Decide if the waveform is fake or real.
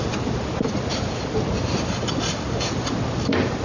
real